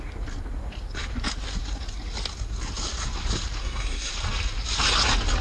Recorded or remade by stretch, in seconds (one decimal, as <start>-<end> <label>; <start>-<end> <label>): 0.0-3.6 recorded; 3.6-4.1 remade; 4.1-5.4 recorded